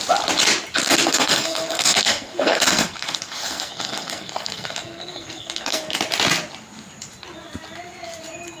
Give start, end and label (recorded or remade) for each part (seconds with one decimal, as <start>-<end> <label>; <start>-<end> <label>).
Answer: 0.0-0.8 recorded; 0.8-6.0 remade; 6.0-8.6 recorded